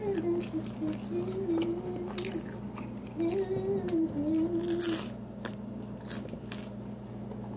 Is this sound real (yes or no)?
yes